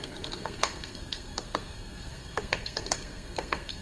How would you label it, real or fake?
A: fake